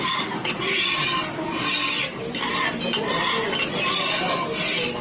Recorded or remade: recorded